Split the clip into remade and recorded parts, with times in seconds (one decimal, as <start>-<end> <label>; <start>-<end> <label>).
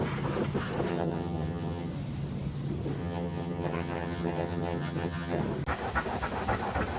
0.0-0.9 recorded; 0.9-1.9 remade; 1.9-3.0 recorded; 3.0-5.4 remade; 5.4-7.0 recorded